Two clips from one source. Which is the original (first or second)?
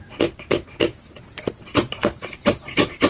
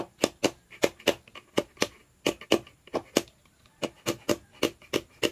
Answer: second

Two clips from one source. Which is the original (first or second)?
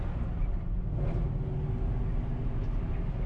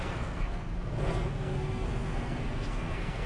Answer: first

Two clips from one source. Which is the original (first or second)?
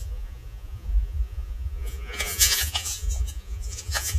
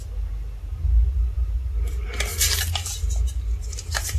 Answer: second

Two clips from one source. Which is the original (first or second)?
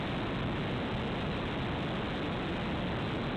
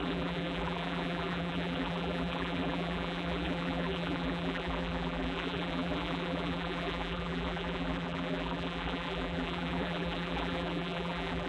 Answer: first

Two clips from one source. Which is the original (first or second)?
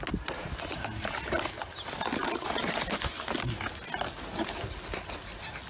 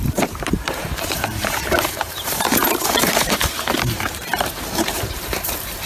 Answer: first